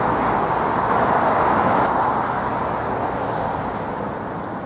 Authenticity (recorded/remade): recorded